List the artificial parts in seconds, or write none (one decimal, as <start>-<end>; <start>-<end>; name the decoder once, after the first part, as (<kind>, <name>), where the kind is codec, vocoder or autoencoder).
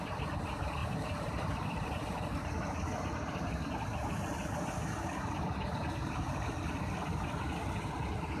0.8-1.9 (vocoder, BigVGAN v2); 2.9-3.6